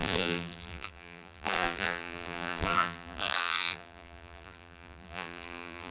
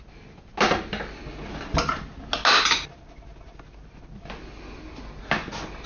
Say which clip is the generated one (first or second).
first